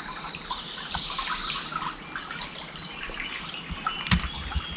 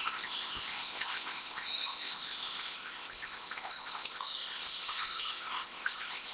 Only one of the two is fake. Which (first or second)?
second